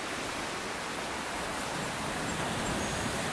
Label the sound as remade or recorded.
recorded